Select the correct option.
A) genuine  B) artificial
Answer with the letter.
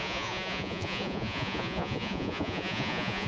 B